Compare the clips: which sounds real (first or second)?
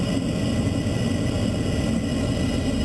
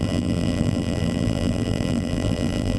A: first